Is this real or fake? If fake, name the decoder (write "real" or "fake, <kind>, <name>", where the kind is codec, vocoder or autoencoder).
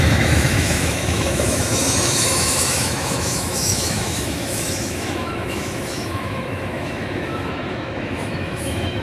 fake, autoencoder, DAC-VAE